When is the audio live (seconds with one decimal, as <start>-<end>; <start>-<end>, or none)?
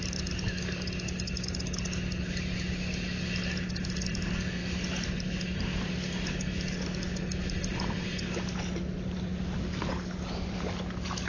0.0-11.3